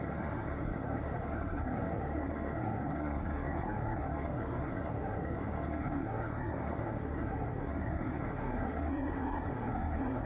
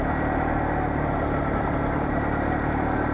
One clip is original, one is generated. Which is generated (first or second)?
first